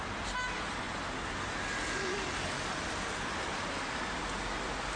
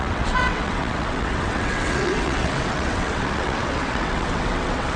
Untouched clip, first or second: first